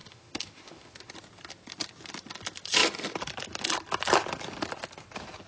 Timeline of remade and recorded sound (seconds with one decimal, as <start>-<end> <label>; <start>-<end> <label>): 0.0-1.1 remade; 1.1-5.5 recorded